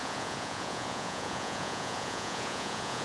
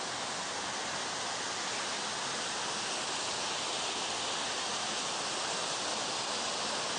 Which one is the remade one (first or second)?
first